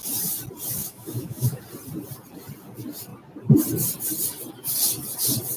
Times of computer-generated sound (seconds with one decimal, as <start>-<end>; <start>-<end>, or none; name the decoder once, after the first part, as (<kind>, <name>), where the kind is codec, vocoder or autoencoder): 0.8-1.6 (autoencoder, DAC-VAE)